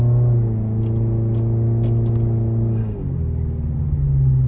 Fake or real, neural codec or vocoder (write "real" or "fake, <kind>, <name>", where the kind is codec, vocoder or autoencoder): real